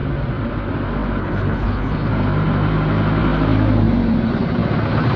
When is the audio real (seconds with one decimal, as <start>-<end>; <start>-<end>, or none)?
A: 0.0-1.2; 2.1-5.2